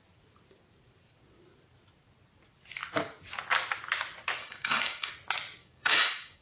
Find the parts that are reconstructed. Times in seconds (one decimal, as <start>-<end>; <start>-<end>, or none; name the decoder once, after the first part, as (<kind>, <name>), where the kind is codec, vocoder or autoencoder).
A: 4.4-5.1 (codec, DAC); 5.6-6.4